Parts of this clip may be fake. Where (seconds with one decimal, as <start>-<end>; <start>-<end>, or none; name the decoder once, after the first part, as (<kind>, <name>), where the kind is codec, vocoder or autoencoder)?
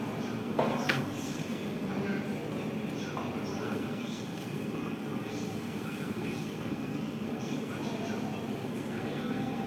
0.4-1.9 (codec, SNAC); 3.5-7.7; 8.6-9.7